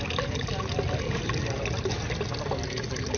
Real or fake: real